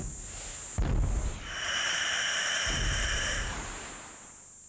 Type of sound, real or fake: real